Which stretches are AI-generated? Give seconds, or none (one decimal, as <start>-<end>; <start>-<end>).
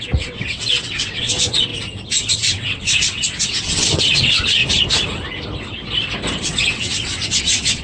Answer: 0.0-1.7; 2.3-4.6; 6.4-7.8